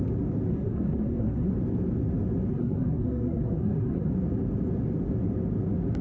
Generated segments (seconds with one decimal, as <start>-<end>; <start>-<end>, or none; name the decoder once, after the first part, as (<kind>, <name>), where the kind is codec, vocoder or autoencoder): 0.5-1.5 (codec, SNAC); 2.5-4.1